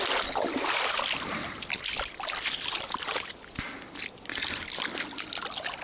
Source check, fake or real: real